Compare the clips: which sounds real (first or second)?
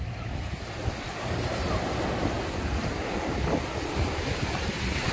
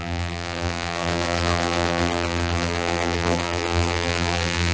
first